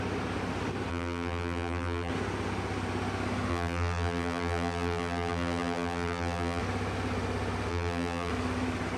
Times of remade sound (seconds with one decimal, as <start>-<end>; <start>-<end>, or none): 0.9-2.1; 3.5-6.6; 7.7-8.3